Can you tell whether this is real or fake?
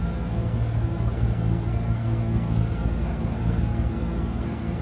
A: fake